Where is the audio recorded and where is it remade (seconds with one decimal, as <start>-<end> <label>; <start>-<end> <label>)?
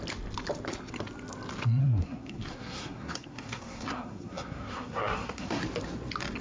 0.0-1.8 recorded; 1.8-5.6 remade; 5.6-6.4 recorded